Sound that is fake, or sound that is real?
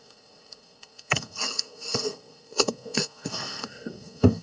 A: fake